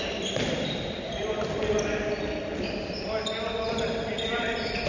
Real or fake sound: real